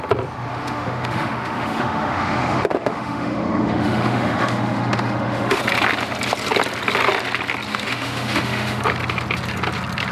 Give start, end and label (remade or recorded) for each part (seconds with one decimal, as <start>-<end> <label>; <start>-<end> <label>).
0.0-0.5 recorded; 0.5-5.6 remade; 5.6-7.7 recorded; 7.7-8.8 remade; 8.8-10.1 recorded